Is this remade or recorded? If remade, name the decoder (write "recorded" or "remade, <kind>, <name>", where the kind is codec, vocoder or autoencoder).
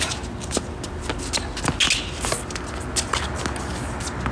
recorded